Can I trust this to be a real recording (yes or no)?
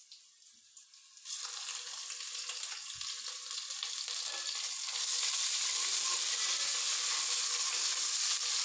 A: yes